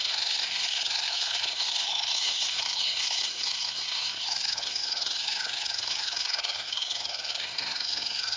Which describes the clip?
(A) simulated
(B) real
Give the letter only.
A